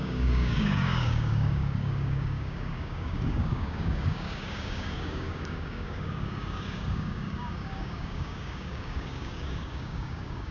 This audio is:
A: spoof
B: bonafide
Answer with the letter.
A